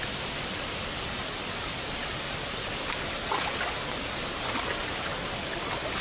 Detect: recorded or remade remade